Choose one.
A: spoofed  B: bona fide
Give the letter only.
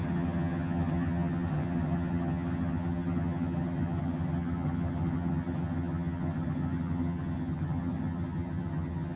A